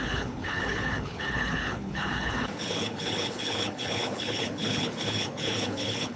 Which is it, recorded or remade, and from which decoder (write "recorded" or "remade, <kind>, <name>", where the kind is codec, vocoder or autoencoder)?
remade, codec, HILCodec